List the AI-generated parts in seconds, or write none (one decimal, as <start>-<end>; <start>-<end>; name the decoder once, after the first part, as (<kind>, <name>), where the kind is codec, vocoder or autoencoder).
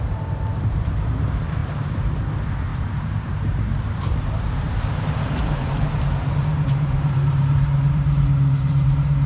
0.0-9.3 (vocoder, BigVGAN v2)